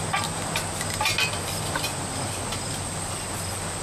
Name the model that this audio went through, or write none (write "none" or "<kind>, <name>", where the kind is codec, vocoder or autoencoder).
none